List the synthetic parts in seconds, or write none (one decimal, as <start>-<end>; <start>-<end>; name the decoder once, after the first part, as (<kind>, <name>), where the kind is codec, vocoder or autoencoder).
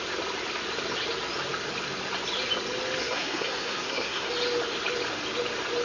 3.0-4.3 (codec, SNAC)